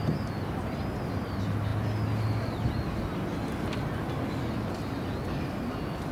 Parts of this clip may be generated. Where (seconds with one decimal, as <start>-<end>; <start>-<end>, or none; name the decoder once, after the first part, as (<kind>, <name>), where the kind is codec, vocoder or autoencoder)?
none